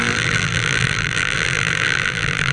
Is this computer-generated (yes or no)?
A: yes